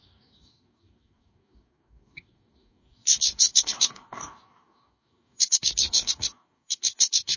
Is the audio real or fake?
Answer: fake